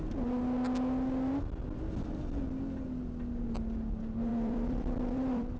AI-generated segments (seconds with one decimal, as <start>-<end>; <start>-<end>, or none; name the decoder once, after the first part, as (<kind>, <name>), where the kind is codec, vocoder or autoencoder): 4.3-5.6 (vocoder, BigVGAN v2)